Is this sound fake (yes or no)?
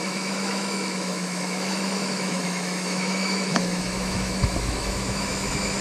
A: yes